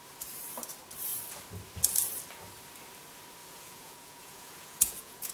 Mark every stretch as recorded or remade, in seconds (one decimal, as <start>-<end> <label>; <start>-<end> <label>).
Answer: 0.0-3.4 recorded; 3.4-5.3 remade